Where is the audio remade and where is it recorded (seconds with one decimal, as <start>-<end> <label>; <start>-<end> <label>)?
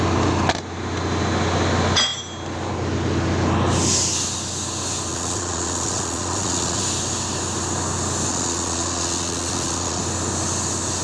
0.0-5.1 recorded; 5.1-6.8 remade; 6.8-8.3 recorded; 8.3-10.0 remade; 10.0-11.0 recorded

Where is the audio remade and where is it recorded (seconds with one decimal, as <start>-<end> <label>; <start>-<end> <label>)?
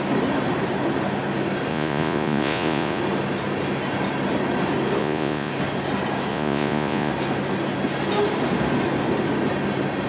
0.0-1.7 recorded; 1.7-3.0 remade; 3.0-5.0 recorded; 5.0-5.5 remade; 5.5-6.3 recorded; 6.3-7.1 remade; 7.1-10.1 recorded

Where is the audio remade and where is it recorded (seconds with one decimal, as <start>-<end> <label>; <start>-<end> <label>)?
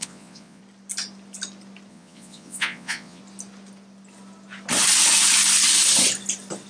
0.0-0.6 remade; 0.6-1.9 recorded; 1.9-3.2 remade; 3.2-6.7 recorded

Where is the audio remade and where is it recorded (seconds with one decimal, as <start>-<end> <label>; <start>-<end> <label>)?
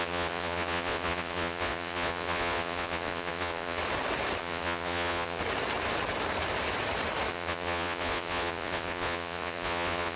0.0-3.8 remade; 3.8-4.4 recorded; 4.4-5.4 remade; 5.4-7.3 recorded; 7.3-10.2 remade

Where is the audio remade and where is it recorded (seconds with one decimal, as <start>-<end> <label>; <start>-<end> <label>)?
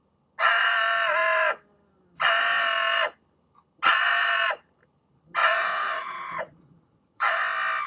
0.0-5.4 recorded; 5.4-7.4 remade; 7.4-7.9 recorded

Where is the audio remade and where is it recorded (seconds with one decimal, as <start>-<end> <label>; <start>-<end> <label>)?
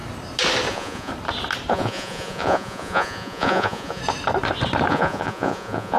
0.0-0.7 recorded; 0.7-1.1 remade; 1.1-1.7 recorded; 1.7-4.0 remade; 4.0-4.9 recorded; 4.9-6.0 remade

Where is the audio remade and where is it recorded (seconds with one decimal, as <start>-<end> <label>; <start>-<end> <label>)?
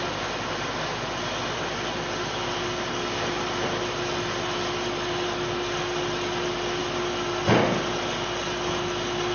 0.0-9.3 recorded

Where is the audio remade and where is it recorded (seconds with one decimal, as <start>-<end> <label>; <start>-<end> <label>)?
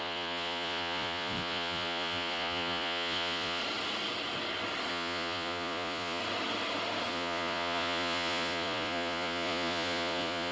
0.0-3.6 remade; 3.6-4.9 recorded; 4.9-6.2 remade; 6.2-7.1 recorded; 7.1-10.5 remade